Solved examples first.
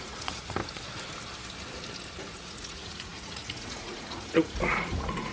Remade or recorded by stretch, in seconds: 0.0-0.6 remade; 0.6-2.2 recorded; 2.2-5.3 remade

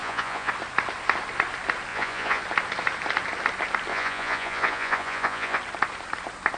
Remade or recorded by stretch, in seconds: 0.0-0.5 remade; 0.5-1.9 recorded; 1.9-2.4 remade; 2.4-3.9 recorded; 3.9-5.6 remade; 5.6-6.6 recorded